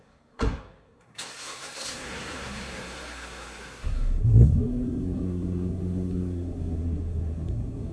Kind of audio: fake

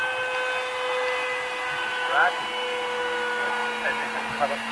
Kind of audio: real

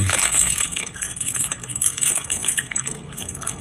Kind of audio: fake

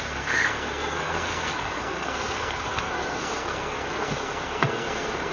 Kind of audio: fake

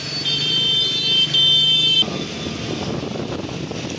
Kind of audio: real